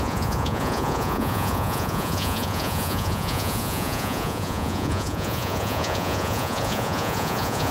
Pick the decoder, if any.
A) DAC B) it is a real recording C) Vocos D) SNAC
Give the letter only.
C